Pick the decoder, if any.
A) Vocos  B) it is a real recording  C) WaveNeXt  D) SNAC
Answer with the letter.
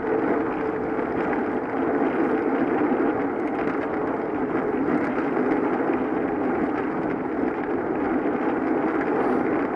B